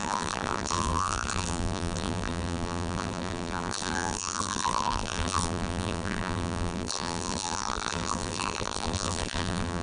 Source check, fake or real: fake